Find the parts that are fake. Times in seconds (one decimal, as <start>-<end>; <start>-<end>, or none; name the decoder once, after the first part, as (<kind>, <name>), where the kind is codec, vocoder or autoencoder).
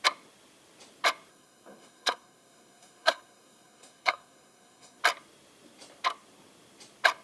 1.3-5.0 (codec, SNAC)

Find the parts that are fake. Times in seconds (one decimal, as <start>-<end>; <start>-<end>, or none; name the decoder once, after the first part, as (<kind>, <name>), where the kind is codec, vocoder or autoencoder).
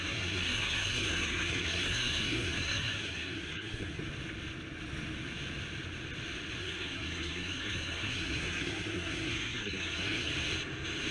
0.0-4.0 (codec, SNAC); 6.6-10.3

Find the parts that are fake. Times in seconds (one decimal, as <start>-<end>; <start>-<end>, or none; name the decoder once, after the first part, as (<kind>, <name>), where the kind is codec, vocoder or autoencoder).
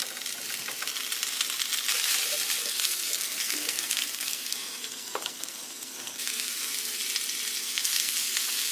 2.6-7.0 (codec, SNAC); 7.6-8.7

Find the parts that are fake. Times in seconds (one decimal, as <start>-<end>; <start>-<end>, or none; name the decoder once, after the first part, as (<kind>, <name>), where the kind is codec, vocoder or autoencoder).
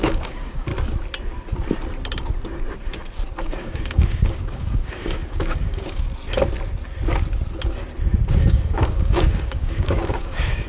0.0-0.7 (codec, DAC); 3.4-6.1; 8.3-10.7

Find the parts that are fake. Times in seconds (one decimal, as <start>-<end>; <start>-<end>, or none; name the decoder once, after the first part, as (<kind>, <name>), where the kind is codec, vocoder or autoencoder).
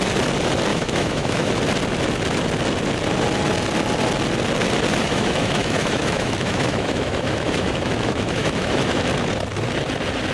0.7-1.5 (autoencoder, DAC-VAE); 5.0-9.0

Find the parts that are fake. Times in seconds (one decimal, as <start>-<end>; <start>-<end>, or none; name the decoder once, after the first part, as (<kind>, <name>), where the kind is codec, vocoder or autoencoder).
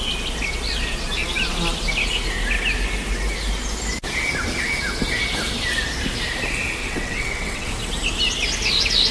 6.8-7.7 (vocoder, WaveNeXt)